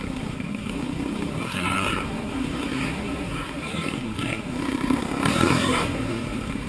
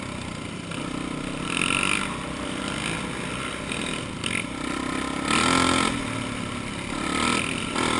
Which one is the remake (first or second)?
first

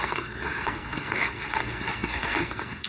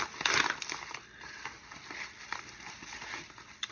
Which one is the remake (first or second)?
first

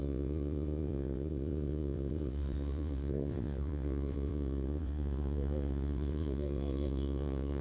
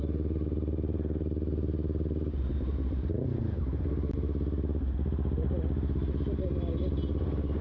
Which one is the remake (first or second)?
first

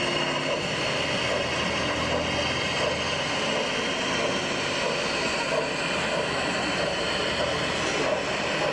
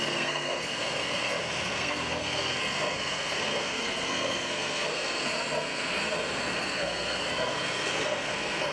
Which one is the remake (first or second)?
second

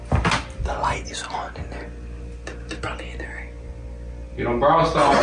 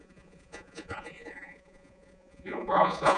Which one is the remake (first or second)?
second